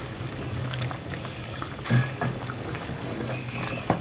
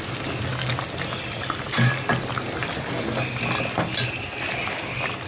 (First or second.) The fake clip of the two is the first